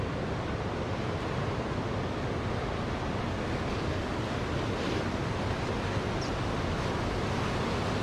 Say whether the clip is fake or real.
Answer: real